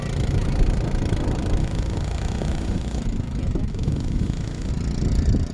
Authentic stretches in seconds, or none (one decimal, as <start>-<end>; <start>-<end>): 0.0-1.6; 3.0-3.7; 4.7-5.5